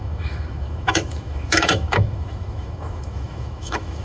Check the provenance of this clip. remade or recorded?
remade